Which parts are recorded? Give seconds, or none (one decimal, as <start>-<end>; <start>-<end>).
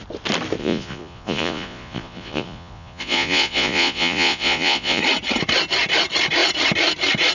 0.0-0.6; 5.0-7.3